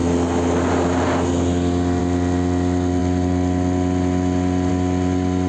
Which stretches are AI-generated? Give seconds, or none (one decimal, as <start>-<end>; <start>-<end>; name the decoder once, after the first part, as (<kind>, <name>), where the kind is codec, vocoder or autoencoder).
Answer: none

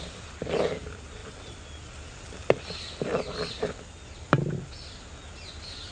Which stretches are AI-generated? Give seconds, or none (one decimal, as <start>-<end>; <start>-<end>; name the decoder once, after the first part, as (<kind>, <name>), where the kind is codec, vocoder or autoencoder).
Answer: none

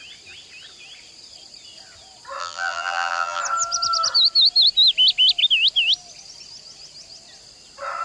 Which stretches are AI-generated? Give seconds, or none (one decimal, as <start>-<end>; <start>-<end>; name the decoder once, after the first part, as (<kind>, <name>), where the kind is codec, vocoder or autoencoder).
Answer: 2.4-3.4 (vocoder, BigVGAN v2)

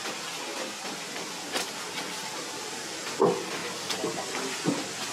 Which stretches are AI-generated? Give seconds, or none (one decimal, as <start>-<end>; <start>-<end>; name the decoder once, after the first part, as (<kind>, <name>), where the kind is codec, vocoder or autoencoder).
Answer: none

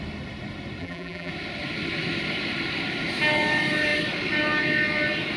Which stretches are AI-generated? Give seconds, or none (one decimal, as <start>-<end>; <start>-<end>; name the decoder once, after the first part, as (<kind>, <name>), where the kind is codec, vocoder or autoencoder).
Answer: 0.8-1.3 (vocoder, BigVGAN v2)

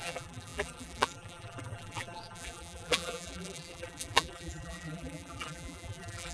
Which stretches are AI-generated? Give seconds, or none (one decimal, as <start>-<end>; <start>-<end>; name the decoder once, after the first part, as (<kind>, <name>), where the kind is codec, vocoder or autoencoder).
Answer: 0.0-6.3 (vocoder, BigVGAN v2)